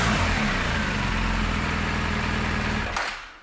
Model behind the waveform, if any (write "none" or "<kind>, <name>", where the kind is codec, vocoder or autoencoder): none